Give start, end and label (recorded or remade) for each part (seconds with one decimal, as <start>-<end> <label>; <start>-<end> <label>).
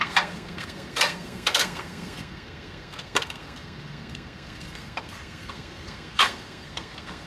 0.0-7.3 remade